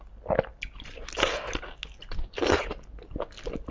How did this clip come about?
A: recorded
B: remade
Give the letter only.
A